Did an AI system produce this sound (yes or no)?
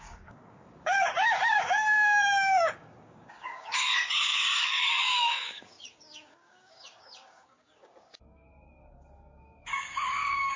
yes